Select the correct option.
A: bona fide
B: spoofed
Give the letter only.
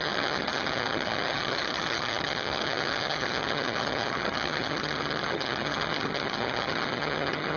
B